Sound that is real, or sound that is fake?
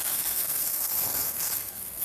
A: fake